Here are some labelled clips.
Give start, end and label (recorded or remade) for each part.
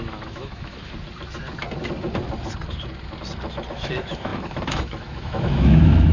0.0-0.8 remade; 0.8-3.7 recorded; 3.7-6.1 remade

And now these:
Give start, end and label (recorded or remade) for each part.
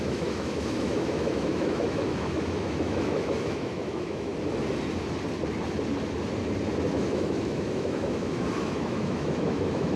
0.0-4.3 remade; 4.3-6.9 recorded; 6.9-10.0 remade